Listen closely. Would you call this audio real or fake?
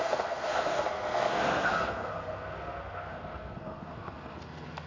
fake